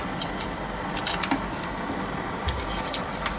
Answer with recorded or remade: recorded